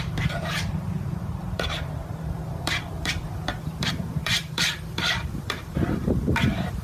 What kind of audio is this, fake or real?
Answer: fake